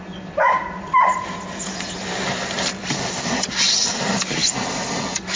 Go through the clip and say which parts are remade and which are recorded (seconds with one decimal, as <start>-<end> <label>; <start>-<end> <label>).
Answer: 0.0-5.4 recorded